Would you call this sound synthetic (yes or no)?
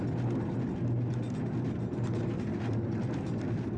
no